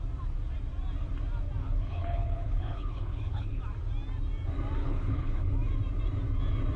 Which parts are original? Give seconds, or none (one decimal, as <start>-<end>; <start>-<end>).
0.0-1.6; 3.6-4.8; 5.5-6.8